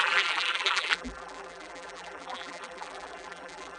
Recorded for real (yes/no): no